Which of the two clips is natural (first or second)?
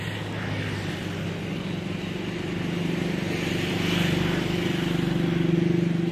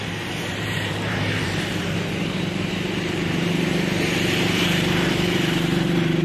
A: first